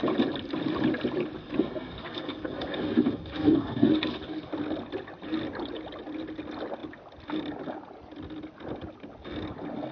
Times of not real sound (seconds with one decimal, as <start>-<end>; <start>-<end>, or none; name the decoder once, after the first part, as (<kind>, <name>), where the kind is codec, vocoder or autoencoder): 1.4-4.5 (codec, SNAC)